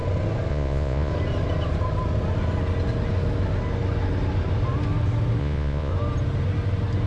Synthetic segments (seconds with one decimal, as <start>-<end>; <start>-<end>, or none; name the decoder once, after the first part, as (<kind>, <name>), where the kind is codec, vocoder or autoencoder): 0.5-1.1 (vocoder, Vocos); 5.4-5.9